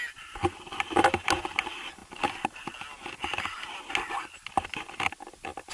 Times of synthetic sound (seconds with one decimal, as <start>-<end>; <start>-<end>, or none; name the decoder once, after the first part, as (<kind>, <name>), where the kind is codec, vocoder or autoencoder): none